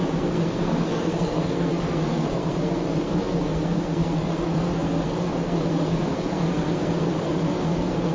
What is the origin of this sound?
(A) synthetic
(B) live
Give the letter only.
A